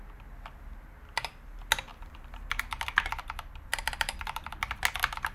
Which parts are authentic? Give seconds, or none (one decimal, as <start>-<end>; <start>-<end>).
0.0-1.9; 2.6-3.7; 4.4-5.3